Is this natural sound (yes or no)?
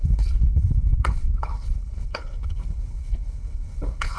no